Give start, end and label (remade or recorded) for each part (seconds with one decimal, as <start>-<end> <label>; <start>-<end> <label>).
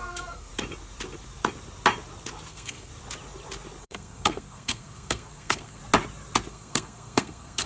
0.0-0.5 remade; 0.5-2.5 recorded; 2.5-2.9 remade; 2.9-3.8 recorded; 3.8-5.8 remade; 5.8-6.5 recorded; 6.5-7.7 remade